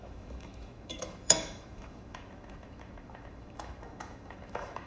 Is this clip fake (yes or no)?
yes